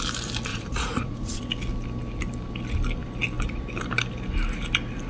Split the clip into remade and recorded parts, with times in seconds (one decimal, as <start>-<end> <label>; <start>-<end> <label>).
0.0-0.5 recorded; 0.5-1.4 remade; 1.4-5.1 recorded